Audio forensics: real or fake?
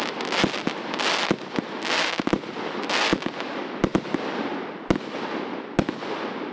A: real